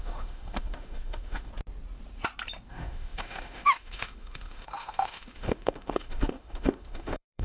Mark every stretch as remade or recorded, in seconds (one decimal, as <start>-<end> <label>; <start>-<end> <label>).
0.0-1.5 remade; 1.5-2.7 recorded; 2.7-7.4 remade